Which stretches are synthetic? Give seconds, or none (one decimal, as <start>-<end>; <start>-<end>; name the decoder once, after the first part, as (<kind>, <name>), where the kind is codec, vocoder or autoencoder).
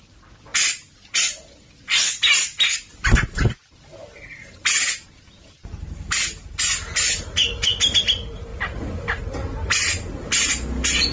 none